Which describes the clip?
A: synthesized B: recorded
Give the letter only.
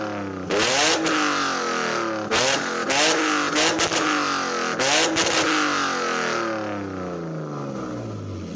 B